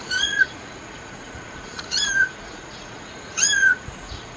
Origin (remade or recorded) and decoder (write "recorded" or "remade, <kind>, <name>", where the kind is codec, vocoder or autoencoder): remade, vocoder, Vocos